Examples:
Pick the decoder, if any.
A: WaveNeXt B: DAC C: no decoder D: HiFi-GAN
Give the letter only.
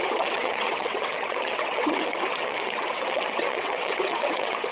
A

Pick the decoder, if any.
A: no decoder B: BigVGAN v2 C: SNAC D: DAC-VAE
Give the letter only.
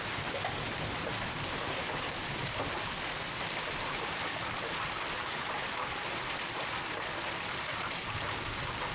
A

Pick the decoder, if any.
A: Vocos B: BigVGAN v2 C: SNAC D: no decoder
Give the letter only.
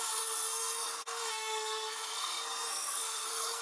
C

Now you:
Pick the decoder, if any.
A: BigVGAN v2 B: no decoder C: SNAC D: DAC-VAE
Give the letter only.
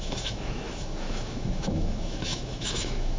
D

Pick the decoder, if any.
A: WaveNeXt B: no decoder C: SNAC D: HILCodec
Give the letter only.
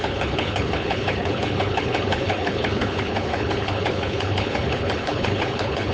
D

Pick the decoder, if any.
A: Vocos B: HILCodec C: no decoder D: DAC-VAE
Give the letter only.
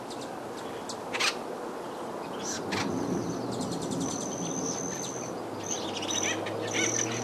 C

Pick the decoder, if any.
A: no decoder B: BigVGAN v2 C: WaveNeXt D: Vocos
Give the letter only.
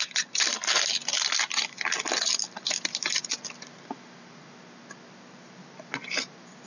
A